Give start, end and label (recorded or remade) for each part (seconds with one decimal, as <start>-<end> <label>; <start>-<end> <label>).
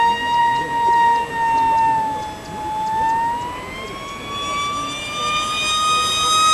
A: 0.0-0.4 recorded; 0.4-1.3 remade; 1.3-6.5 recorded